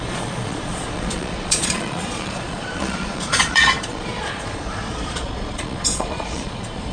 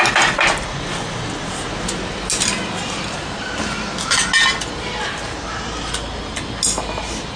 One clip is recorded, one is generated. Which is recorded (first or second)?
second